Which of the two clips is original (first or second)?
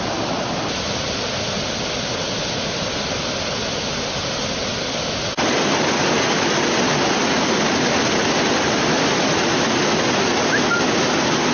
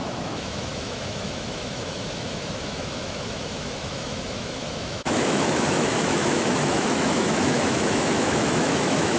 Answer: first